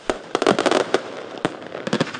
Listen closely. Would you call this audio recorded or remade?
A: remade